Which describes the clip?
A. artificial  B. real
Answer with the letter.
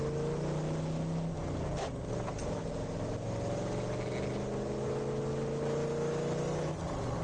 B